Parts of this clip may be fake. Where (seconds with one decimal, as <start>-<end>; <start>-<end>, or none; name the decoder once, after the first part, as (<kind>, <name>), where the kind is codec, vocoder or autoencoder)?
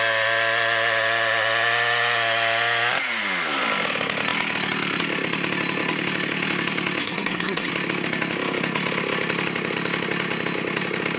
7.0-7.7 (codec, SNAC)